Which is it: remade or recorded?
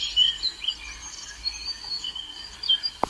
recorded